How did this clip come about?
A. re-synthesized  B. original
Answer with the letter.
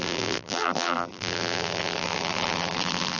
A